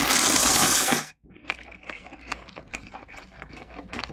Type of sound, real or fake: fake